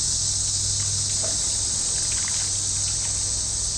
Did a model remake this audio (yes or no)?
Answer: no